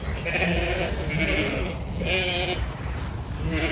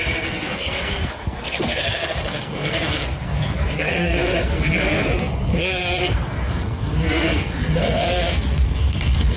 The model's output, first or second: second